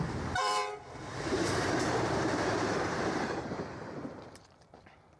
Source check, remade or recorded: remade